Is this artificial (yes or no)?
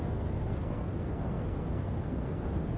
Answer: yes